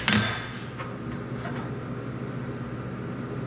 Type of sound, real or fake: real